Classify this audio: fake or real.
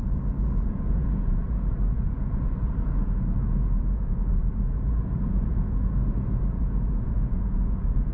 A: fake